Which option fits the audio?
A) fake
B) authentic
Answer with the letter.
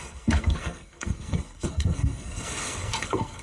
A